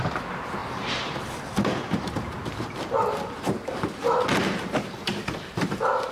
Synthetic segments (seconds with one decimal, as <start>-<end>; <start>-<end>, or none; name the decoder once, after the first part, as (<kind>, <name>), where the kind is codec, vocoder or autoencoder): 0.0-6.1 (vocoder, BigVGAN v2)